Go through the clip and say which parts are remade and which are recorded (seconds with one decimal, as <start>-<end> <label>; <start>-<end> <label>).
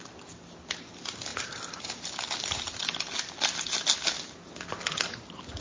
0.0-5.6 recorded